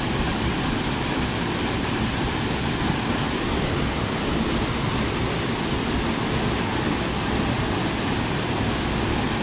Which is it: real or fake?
real